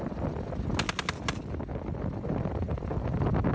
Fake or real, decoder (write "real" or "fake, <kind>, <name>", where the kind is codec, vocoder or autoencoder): real